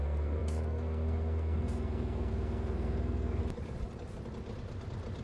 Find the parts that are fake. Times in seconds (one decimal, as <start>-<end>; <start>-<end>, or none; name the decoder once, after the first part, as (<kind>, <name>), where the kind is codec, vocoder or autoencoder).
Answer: 0.0-3.4 (codec, SNAC)

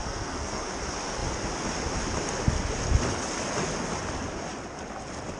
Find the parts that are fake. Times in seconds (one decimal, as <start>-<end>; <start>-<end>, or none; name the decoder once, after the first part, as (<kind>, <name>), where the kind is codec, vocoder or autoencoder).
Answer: 0.0-0.7 (codec, SNAC)

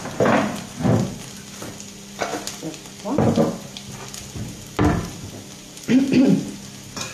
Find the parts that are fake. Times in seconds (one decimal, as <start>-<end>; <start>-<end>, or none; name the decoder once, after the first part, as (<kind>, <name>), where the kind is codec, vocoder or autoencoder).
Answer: none

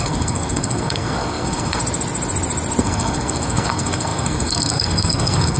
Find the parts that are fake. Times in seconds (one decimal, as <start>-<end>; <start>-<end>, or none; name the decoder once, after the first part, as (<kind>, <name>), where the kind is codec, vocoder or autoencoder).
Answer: 0.0-1.8 (codec, SNAC); 2.8-5.6

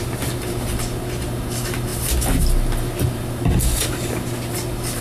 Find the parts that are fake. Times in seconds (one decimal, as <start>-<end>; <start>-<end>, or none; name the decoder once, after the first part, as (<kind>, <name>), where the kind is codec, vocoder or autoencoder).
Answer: none

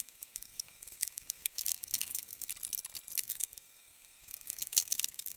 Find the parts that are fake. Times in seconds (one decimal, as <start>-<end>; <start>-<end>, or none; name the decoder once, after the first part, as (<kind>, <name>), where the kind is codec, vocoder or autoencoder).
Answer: 0.0-2.5 (codec, SNAC); 3.2-5.4